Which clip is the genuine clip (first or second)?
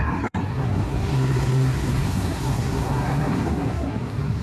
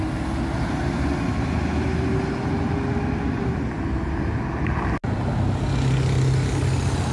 second